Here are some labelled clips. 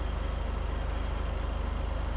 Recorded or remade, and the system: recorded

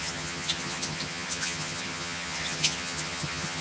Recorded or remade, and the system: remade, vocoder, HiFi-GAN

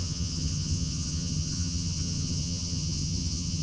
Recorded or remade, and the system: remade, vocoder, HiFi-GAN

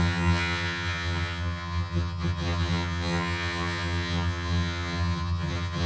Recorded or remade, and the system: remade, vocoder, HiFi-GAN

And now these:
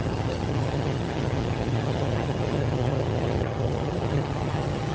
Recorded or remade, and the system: remade, vocoder, HiFi-GAN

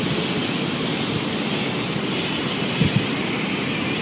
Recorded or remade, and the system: recorded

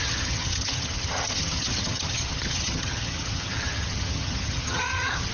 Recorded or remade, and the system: remade, vocoder, HiFi-GAN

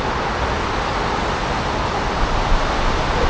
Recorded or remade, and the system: recorded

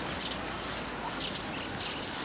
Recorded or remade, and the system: recorded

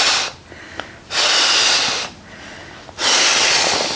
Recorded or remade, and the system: recorded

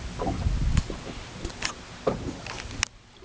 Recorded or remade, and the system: recorded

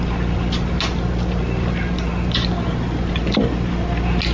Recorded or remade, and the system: recorded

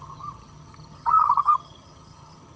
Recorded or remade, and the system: remade, vocoder, HiFi-GAN